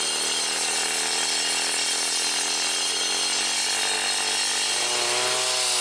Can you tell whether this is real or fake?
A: real